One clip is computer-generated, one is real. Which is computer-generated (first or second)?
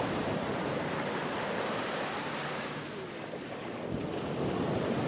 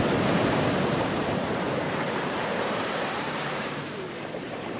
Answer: second